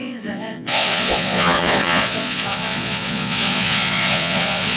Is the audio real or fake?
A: fake